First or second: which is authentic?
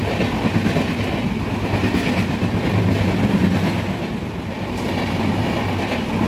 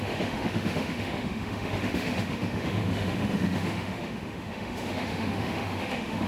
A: first